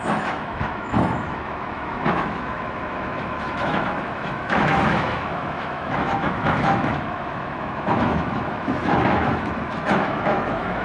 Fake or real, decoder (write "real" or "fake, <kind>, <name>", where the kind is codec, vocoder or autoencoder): fake, autoencoder, DAC-VAE